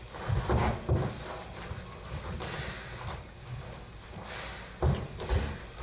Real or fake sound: real